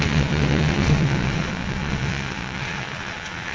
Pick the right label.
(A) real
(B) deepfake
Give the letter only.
B